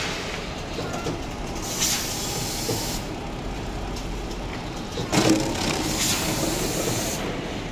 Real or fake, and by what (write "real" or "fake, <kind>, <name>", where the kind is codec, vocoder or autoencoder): real